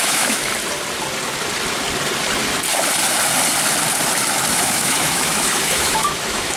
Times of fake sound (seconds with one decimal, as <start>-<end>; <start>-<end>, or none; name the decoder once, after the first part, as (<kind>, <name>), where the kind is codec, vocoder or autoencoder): 0.0-0.5 (autoencoder, DAC-VAE); 4.5-6.6